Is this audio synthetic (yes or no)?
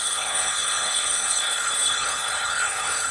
yes